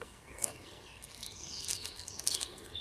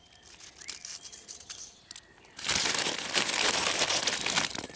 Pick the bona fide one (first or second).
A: second